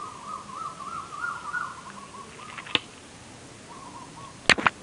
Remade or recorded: recorded